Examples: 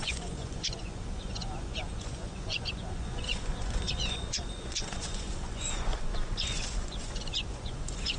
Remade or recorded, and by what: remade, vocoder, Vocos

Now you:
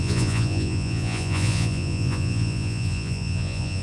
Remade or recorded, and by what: remade, vocoder, Vocos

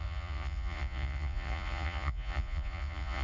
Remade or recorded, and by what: remade, vocoder, Vocos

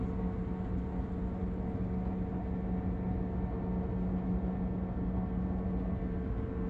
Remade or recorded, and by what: recorded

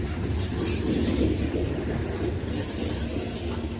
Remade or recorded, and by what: recorded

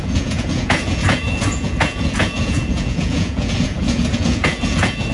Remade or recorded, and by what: remade, vocoder, Vocos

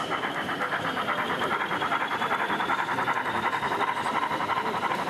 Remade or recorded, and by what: recorded